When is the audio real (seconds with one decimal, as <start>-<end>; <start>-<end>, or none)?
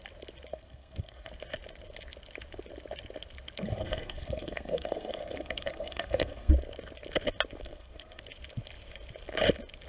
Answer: 0.0-0.5; 1.3-3.8; 6.5-7.6; 8.2-9.9